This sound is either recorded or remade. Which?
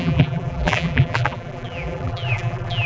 remade